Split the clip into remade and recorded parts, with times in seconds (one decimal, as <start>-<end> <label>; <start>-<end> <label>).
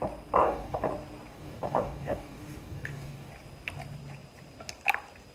0.0-0.4 recorded; 0.4-0.9 remade; 0.9-1.3 recorded; 1.3-3.3 remade; 3.3-5.3 recorded